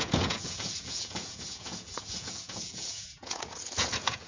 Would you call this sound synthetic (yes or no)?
yes